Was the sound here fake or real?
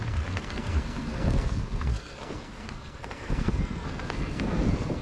fake